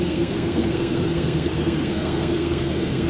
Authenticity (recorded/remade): remade